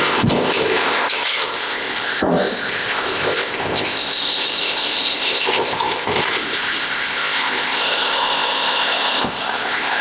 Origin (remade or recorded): remade